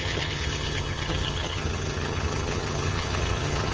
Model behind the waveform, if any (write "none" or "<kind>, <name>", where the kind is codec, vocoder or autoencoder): vocoder, HiFi-GAN